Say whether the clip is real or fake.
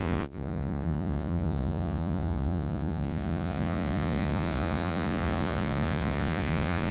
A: fake